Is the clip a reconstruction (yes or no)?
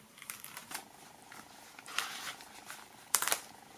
yes